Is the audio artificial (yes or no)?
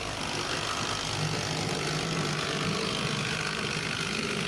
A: no